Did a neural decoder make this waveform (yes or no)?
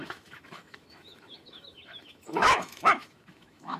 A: yes